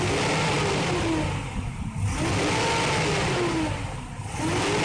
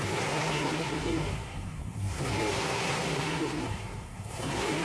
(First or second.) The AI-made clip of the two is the second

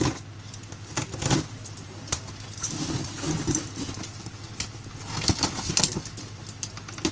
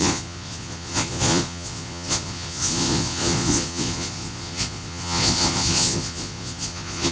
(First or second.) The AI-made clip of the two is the second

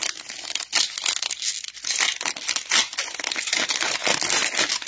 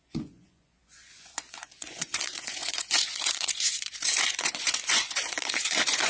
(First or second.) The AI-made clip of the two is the second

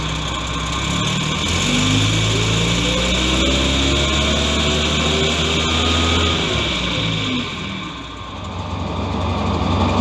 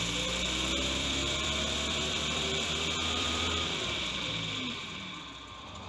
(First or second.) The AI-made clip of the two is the second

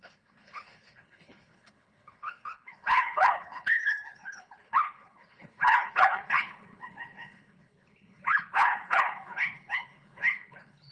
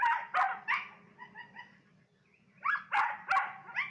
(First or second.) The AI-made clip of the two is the first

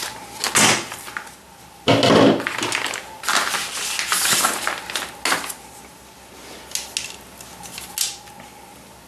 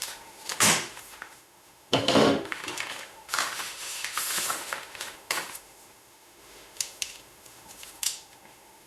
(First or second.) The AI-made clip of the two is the second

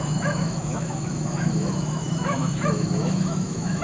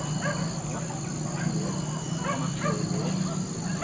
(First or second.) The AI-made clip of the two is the first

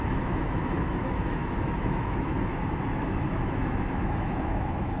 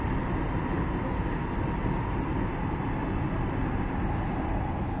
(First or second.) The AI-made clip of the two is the first